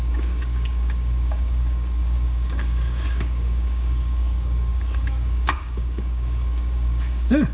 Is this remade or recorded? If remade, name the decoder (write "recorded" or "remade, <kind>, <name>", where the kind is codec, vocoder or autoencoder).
remade, codec, DAC